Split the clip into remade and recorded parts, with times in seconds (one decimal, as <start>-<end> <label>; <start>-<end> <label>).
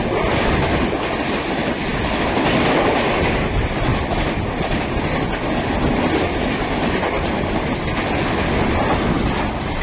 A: 0.0-9.8 recorded